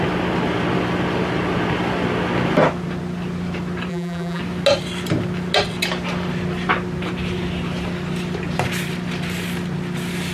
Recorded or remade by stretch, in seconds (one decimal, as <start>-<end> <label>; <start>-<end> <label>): 0.0-3.9 recorded; 3.9-4.4 remade; 4.4-10.3 recorded